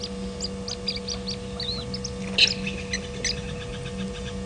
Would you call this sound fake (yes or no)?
no